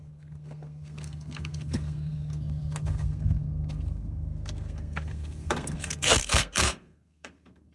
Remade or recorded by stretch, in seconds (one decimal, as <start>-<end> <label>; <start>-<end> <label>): 0.0-7.7 remade